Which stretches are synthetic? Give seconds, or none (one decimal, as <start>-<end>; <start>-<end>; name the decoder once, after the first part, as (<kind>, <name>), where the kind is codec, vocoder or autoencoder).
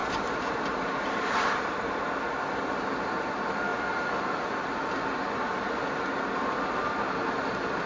0.0-2.1 (vocoder, BigVGAN v2); 3.7-4.4; 6.8-7.5